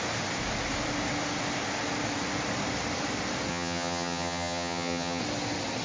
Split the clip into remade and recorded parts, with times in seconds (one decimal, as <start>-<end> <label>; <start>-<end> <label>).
0.0-3.5 recorded; 3.5-5.2 remade; 5.2-5.8 recorded